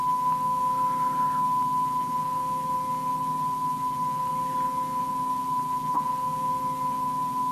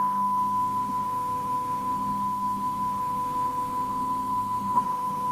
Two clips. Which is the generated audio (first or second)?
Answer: second